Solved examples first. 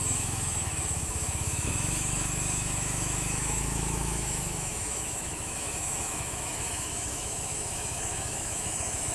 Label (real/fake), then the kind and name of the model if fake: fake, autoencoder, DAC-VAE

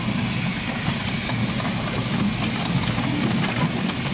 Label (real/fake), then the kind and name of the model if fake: real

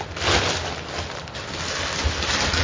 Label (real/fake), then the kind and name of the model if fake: real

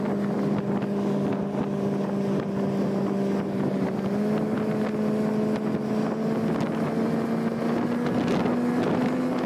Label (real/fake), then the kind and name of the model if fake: real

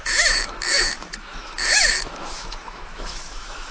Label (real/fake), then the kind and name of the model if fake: fake, autoencoder, DAC-VAE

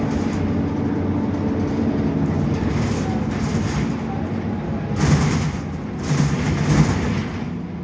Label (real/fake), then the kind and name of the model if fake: real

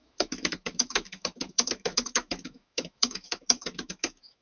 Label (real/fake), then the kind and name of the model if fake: fake, autoencoder, DAC-VAE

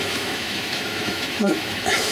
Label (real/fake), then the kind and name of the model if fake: fake, autoencoder, DAC-VAE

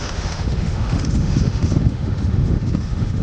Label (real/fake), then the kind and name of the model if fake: fake, autoencoder, DAC-VAE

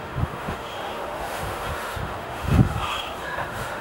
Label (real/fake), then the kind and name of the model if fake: fake, autoencoder, DAC-VAE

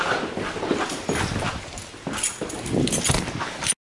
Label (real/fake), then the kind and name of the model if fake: real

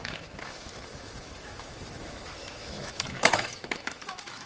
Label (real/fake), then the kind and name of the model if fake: fake, autoencoder, DAC-VAE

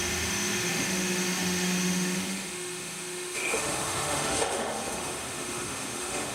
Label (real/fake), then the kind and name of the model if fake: fake, autoencoder, DAC-VAE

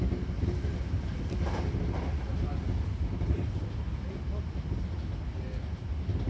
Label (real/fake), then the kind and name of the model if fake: real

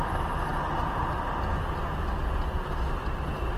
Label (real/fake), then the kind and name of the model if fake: real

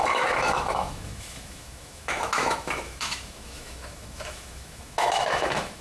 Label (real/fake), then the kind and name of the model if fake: fake, autoencoder, DAC-VAE